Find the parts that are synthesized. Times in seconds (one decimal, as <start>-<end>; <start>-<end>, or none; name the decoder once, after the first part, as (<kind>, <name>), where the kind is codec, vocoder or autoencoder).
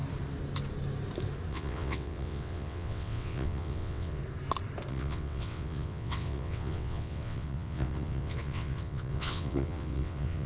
1.5-4.2 (vocoder, WaveNeXt); 4.9-10.5